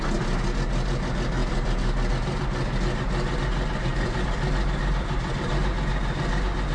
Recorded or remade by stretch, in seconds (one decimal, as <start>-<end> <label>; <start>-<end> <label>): 0.0-1.4 recorded; 1.4-2.1 remade; 2.1-3.9 recorded; 3.9-5.5 remade; 5.5-6.7 recorded